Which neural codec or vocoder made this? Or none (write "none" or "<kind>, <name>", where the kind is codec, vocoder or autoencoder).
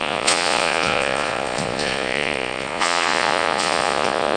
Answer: vocoder, Vocos